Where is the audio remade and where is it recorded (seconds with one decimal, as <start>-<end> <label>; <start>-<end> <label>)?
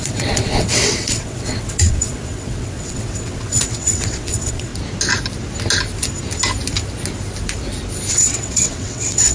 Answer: 0.0-4.7 remade; 4.7-8.1 recorded; 8.1-9.3 remade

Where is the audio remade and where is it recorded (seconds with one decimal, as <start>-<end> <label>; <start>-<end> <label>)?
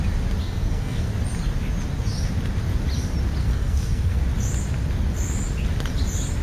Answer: 0.0-0.4 recorded; 0.4-1.1 remade; 1.1-3.4 recorded; 3.4-4.2 remade; 4.2-6.4 recorded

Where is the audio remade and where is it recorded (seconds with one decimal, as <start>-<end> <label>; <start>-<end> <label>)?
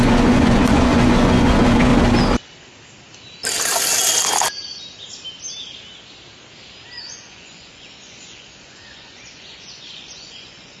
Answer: 0.0-1.9 remade; 1.9-7.0 recorded; 7.0-10.8 remade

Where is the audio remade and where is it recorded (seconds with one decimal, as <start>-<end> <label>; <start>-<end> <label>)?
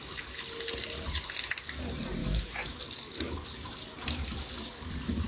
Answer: 0.0-2.2 recorded; 2.2-2.8 remade; 2.8-5.3 recorded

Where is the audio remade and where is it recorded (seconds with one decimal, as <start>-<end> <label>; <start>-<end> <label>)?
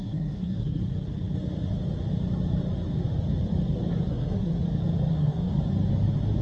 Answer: 0.0-0.8 remade; 0.8-4.1 recorded; 4.1-4.5 remade; 4.5-5.1 recorded; 5.1-5.5 remade; 5.5-6.4 recorded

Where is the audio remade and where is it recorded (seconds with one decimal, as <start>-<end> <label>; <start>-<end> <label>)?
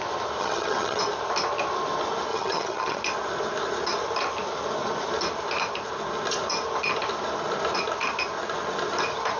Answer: 0.0-0.4 recorded; 0.4-1.0 remade; 1.0-2.3 recorded; 2.3-3.0 remade; 3.0-9.4 recorded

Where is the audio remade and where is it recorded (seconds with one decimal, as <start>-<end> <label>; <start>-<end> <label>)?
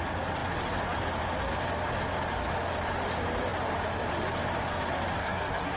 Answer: 0.0-5.2 recorded; 5.2-5.8 remade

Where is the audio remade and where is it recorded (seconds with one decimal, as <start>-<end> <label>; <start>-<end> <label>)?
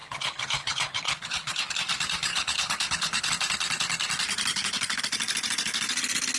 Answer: 0.0-1.7 remade; 1.7-2.3 recorded; 2.3-3.3 remade; 3.3-4.5 recorded; 4.5-5.0 remade; 5.0-6.4 recorded